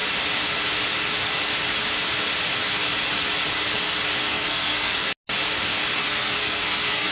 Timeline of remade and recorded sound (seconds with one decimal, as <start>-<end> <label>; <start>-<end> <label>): 0.0-4.2 recorded; 4.2-4.9 remade; 4.9-6.0 recorded; 6.0-7.1 remade